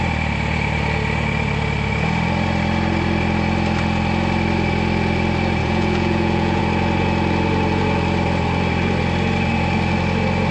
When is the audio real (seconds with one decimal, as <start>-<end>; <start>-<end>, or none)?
0.0-5.6; 6.6-10.5